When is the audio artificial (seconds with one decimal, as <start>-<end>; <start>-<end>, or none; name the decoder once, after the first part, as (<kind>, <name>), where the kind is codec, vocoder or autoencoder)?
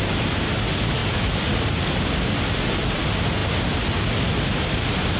none